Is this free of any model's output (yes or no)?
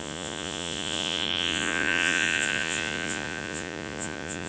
no